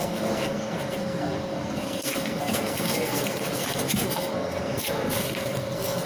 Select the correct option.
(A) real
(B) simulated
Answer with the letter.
B